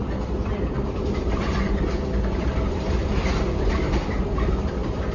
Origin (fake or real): fake